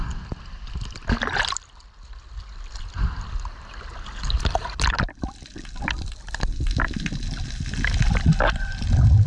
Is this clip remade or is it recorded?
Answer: recorded